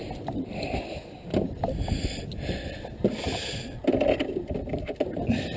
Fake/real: real